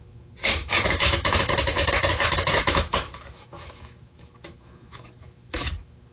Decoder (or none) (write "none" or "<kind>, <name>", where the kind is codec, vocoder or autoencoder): autoencoder, DAC-VAE